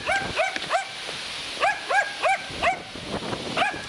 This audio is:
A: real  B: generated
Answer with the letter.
A